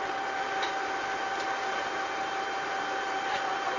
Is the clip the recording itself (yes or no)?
yes